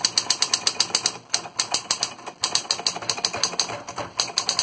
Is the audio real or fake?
real